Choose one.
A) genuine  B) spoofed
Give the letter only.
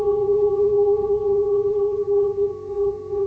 B